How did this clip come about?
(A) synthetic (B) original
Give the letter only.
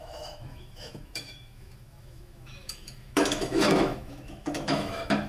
A